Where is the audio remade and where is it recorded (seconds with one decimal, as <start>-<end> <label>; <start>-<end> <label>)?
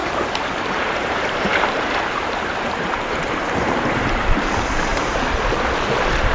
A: 0.0-4.9 remade; 4.9-6.3 recorded